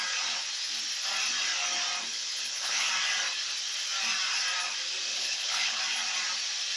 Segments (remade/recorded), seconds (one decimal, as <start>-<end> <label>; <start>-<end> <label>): 0.0-2.1 recorded; 2.1-2.9 remade; 2.9-5.1 recorded; 5.1-5.8 remade; 5.8-6.8 recorded